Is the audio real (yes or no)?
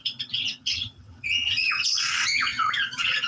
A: no